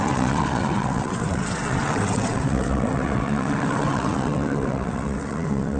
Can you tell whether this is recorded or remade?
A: remade